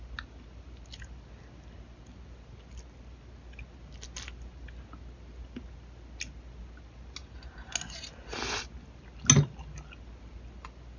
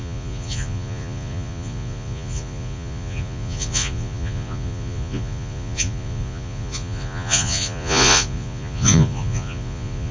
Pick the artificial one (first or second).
second